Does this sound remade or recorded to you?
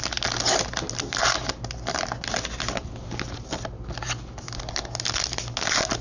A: recorded